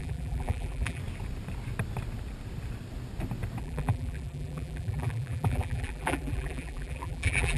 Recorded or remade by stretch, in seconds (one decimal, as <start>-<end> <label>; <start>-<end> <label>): 0.0-1.0 remade; 1.0-3.6 recorded; 3.6-7.6 remade